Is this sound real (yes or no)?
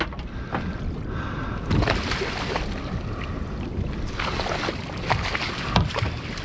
yes